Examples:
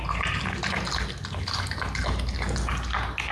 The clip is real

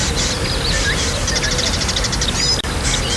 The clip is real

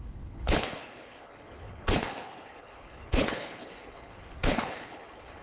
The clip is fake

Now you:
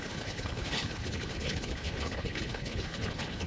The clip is fake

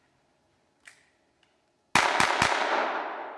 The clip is real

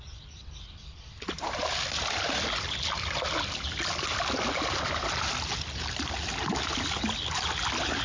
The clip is real